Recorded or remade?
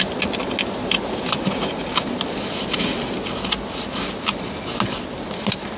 recorded